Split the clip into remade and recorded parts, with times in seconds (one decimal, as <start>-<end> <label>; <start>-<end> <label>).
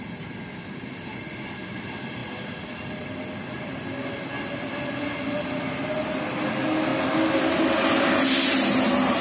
0.0-9.2 recorded